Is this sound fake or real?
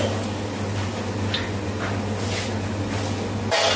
real